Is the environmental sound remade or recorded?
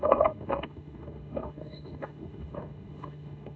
remade